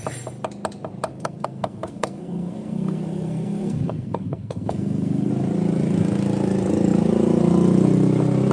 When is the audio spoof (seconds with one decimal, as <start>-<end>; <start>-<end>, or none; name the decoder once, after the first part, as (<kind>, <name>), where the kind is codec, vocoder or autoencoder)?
1.1-5.3 (codec, SNAC)